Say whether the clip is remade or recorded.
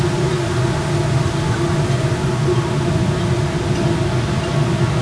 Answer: recorded